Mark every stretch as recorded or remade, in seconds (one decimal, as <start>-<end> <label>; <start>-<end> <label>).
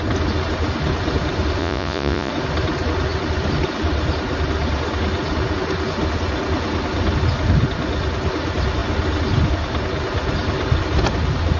0.0-1.6 recorded; 1.6-2.3 remade; 2.3-11.6 recorded